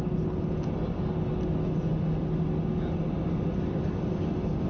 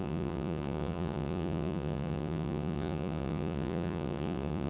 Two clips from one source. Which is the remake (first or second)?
second